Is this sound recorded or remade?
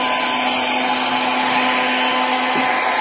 recorded